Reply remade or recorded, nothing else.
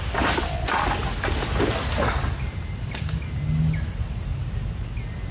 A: recorded